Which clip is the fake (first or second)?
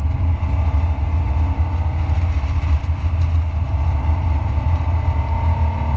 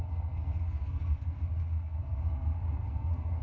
second